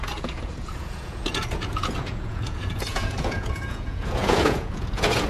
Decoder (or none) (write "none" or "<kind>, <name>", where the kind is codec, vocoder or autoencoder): vocoder, Vocos